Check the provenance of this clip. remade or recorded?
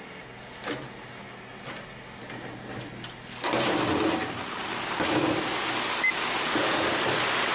recorded